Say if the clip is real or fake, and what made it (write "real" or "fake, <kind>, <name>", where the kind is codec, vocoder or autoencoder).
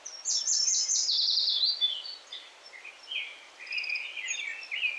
real